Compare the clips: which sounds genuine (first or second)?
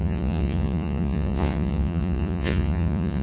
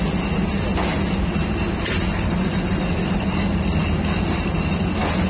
second